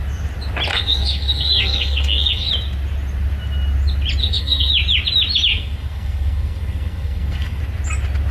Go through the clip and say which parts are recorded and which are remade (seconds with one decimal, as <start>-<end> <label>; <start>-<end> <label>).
0.0-0.7 recorded; 0.7-2.5 remade; 2.5-4.2 recorded; 4.2-4.7 remade; 4.7-5.5 recorded; 5.5-7.6 remade; 7.6-8.3 recorded